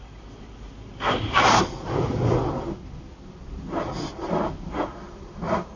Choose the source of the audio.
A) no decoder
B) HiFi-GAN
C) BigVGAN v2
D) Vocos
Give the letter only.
A